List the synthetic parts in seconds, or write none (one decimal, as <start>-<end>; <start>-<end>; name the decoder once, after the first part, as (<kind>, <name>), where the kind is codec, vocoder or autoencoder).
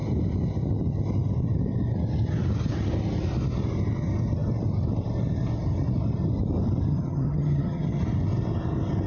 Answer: 6.9-8.0 (vocoder, HiFi-GAN)